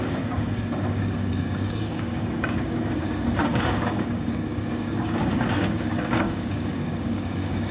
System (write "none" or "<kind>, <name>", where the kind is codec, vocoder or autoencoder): codec, DAC